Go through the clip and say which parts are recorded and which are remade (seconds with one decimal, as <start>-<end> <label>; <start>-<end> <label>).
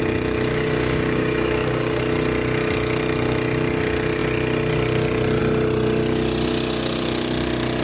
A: 0.0-0.5 recorded; 0.5-2.0 remade; 2.0-7.8 recorded